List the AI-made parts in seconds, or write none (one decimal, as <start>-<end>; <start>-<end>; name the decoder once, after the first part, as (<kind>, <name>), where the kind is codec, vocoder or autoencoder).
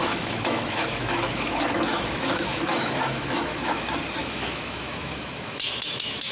0.0-3.8 (autoencoder, DAC-VAE); 4.2-6.3